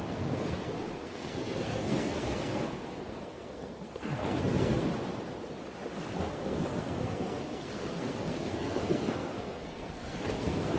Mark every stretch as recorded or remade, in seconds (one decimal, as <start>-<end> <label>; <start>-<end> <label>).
0.0-4.9 remade; 4.9-6.2 recorded; 6.2-10.8 remade